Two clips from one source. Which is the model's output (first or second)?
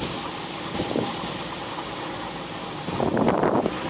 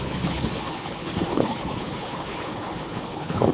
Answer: second